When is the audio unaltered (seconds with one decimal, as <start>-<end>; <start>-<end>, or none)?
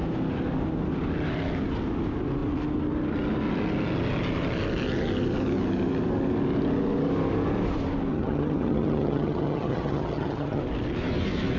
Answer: 0.0-8.1; 10.6-11.6